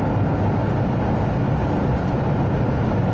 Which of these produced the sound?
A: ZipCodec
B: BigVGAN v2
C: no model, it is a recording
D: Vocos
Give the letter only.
C